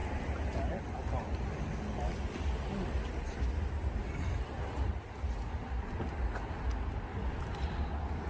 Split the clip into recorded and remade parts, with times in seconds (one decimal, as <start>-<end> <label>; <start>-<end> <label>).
0.0-8.3 recorded

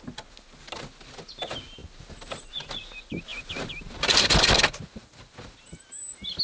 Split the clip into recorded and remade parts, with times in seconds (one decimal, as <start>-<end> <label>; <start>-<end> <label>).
0.0-6.4 recorded

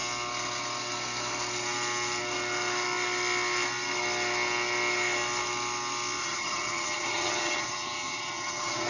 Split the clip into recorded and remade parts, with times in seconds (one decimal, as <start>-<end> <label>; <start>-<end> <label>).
0.0-6.2 recorded; 6.2-8.9 remade

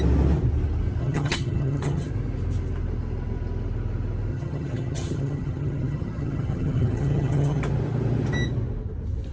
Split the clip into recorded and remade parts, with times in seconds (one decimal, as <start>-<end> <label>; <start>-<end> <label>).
0.0-1.0 recorded; 1.0-2.1 remade; 2.1-4.3 recorded; 4.3-7.6 remade; 7.6-9.3 recorded

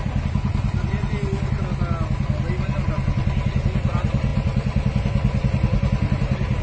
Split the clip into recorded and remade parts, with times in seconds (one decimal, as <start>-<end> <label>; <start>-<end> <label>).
0.0-6.6 recorded

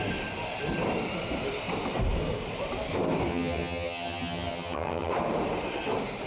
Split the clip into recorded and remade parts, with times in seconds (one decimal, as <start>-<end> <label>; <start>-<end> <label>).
0.0-3.3 recorded; 3.3-5.1 remade; 5.1-6.3 recorded

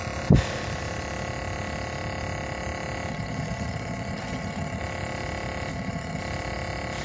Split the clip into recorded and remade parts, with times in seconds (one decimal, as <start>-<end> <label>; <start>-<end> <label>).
0.0-3.1 recorded; 3.1-4.8 remade; 4.8-5.7 recorded; 5.7-6.2 remade; 6.2-7.0 recorded